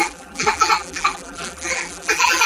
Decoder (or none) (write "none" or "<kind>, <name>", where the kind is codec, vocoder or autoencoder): vocoder, BigVGAN v2